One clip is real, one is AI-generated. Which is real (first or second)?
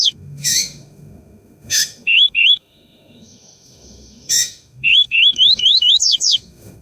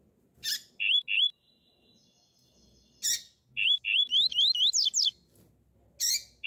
second